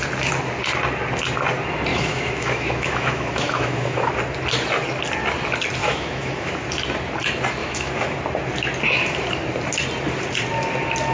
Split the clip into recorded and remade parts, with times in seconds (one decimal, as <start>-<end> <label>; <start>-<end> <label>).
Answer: 0.0-1.9 recorded; 1.9-4.1 remade; 4.1-5.8 recorded; 5.8-6.5 remade; 6.5-7.6 recorded; 7.6-8.2 remade; 8.2-11.1 recorded